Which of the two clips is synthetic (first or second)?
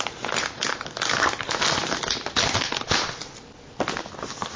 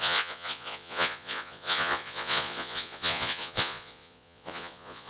second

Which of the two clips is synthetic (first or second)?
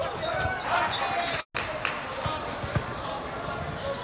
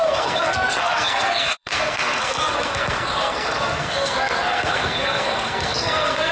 second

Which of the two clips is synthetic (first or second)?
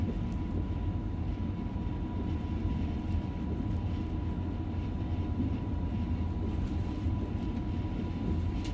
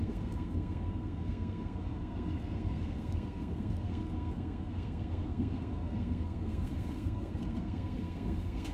second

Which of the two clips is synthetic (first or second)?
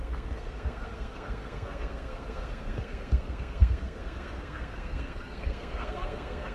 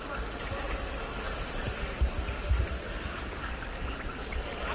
first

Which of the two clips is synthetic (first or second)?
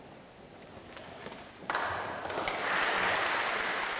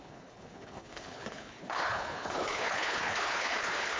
second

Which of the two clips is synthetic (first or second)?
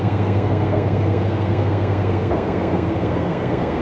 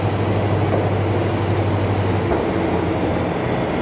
first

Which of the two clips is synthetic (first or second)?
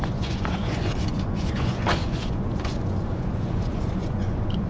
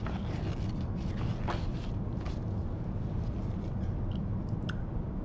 first